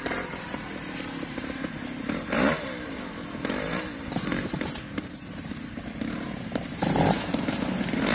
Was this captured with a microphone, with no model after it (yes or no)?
no